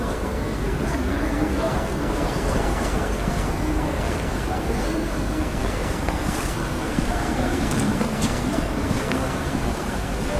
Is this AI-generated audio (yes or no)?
yes